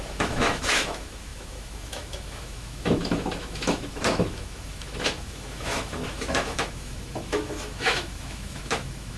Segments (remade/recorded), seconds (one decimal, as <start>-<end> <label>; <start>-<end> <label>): 0.0-9.2 remade